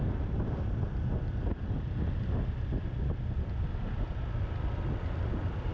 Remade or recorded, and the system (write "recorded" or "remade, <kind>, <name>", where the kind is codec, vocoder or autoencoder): recorded